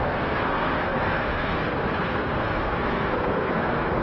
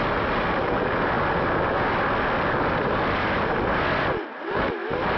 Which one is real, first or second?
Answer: second